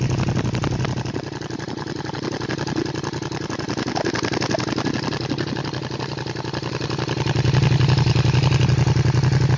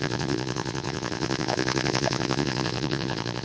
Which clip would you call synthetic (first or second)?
second